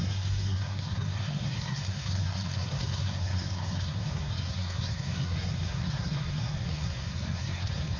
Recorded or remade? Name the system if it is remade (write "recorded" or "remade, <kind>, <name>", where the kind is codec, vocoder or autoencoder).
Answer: remade, codec, SNAC